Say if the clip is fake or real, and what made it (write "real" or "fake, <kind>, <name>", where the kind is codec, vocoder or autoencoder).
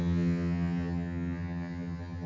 fake, vocoder, HiFi-GAN